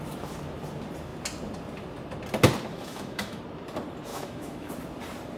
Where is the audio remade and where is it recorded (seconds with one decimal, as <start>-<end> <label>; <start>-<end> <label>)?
0.0-2.7 recorded; 2.7-3.4 remade; 3.4-4.1 recorded; 4.1-4.7 remade; 4.7-5.4 recorded